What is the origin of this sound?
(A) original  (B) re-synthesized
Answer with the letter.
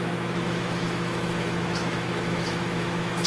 B